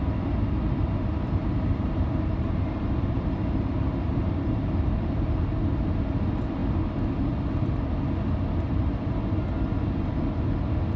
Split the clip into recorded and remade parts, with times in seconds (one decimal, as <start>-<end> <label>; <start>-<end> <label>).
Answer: 0.0-1.4 recorded; 1.4-5.5 remade; 5.5-11.0 recorded